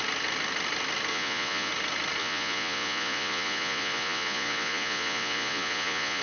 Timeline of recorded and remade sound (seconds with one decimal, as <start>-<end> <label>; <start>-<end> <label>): 0.0-1.1 recorded; 1.1-1.7 remade; 1.7-2.2 recorded; 2.2-6.2 remade